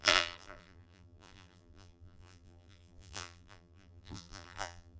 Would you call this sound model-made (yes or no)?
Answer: yes